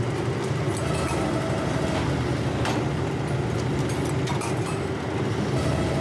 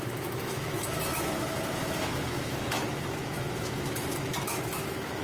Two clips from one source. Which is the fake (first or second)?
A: second